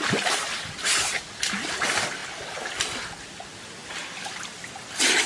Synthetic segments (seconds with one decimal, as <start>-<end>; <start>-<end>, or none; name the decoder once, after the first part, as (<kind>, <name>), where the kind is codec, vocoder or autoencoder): 3.8-4.3 (vocoder, BigVGAN v2)